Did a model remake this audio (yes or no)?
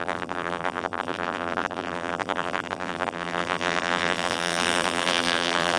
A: yes